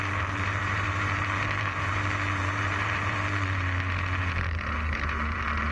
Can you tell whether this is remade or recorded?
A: remade